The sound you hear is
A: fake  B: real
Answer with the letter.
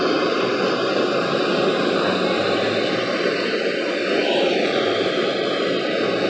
A